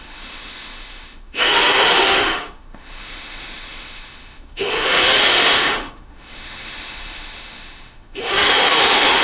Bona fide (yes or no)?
no